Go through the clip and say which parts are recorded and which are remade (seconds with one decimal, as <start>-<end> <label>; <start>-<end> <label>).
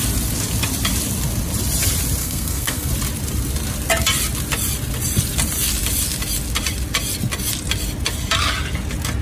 0.0-2.2 recorded; 2.2-2.9 remade; 2.9-9.2 recorded